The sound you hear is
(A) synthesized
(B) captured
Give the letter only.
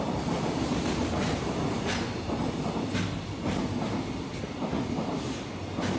B